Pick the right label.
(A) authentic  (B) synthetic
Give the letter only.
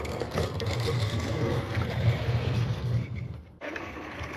B